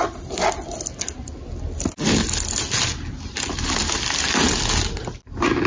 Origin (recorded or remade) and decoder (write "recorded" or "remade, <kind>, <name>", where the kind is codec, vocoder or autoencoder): recorded